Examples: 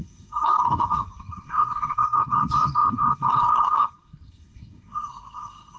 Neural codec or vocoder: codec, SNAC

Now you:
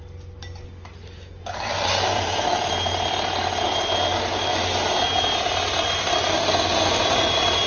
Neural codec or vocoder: none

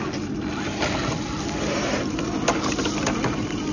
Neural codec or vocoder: none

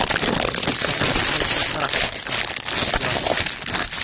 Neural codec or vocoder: none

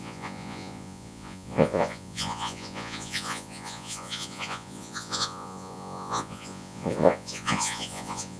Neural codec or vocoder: vocoder, Vocos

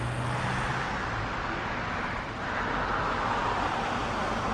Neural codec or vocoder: none